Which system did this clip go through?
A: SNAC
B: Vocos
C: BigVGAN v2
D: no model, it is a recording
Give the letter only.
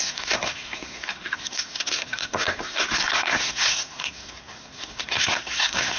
A